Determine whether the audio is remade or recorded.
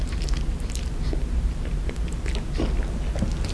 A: recorded